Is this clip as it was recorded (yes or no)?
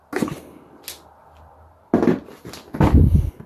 yes